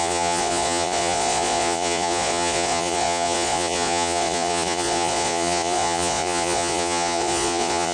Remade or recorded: remade